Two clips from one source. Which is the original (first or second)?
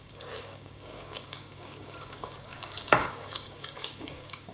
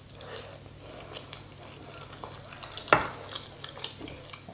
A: second